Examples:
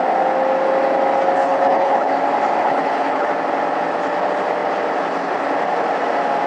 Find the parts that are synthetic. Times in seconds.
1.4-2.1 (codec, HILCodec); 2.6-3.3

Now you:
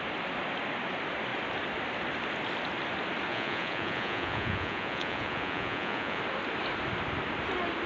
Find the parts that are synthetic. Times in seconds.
3.3-6.2 (vocoder, Vocos)

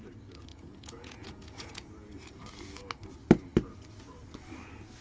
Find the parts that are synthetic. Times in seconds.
0.5-2.1 (vocoder, Vocos)

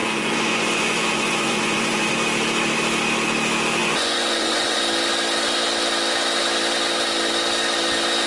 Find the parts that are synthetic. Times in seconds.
0.0-2.1 (vocoder, Vocos); 3.8-4.8

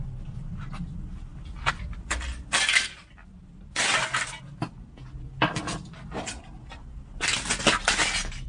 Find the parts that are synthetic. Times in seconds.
none

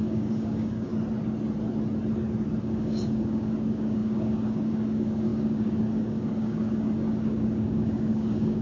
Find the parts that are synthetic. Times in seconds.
0.0-0.9 (codec, DAC); 2.6-8.6